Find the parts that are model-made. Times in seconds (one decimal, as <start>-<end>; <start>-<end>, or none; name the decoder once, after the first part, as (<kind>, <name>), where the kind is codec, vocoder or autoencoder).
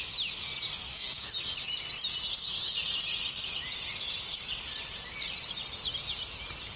0.7-1.3 (codec, SNAC)